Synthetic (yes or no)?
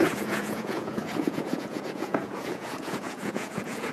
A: yes